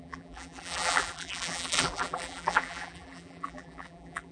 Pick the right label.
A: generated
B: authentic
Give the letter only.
A